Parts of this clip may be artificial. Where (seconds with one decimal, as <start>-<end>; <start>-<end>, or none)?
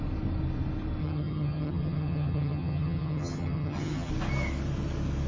1.0-4.1